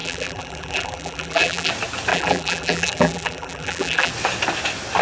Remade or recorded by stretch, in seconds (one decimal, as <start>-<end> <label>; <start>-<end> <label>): 0.0-1.7 remade; 1.7-2.1 recorded; 2.1-4.1 remade; 4.1-5.0 recorded